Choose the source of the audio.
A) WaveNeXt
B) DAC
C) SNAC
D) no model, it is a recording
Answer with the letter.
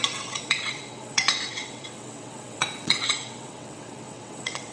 A